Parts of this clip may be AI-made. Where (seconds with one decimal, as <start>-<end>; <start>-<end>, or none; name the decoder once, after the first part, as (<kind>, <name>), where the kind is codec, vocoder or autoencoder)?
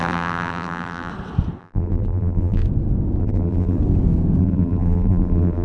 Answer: 0.0-1.1 (vocoder, BigVGAN v2); 1.6-2.6; 3.2-3.8; 4.4-5.6